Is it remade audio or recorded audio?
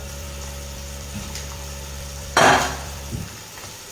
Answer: remade